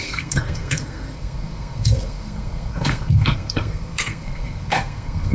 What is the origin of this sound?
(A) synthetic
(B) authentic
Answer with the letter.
A